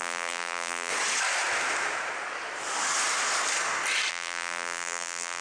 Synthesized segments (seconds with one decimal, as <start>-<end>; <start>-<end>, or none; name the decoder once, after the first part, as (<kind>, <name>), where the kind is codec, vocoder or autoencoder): 0.0-0.9 (vocoder, BigVGAN v2); 4.1-5.4